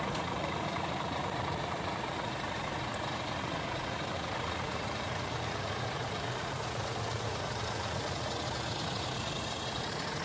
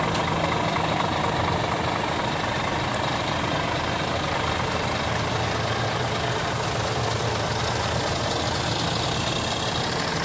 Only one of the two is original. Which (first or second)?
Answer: second